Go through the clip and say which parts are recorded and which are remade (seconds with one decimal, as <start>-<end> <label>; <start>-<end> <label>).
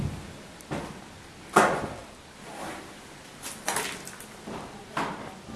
0.0-5.6 recorded